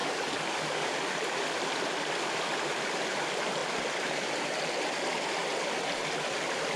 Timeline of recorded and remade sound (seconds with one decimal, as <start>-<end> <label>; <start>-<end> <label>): 0.0-0.9 remade; 0.9-6.8 recorded